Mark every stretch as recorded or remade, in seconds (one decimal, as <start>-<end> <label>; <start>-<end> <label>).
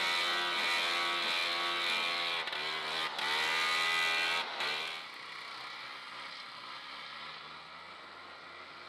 0.0-8.9 recorded